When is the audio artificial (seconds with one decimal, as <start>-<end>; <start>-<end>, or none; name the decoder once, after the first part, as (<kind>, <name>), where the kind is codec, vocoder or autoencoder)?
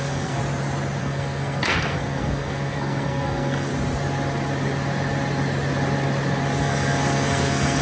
0.0-0.4 (codec, SNAC); 1.0-3.7; 6.6-7.8